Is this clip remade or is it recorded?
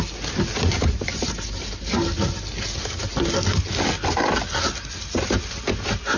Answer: recorded